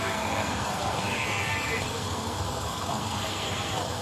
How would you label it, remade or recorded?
remade